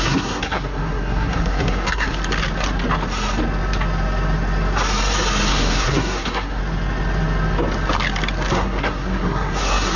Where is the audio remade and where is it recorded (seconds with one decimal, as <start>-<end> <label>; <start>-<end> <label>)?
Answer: 0.0-2.2 remade; 2.2-5.5 recorded; 5.5-6.6 remade; 6.6-8.5 recorded; 8.5-10.0 remade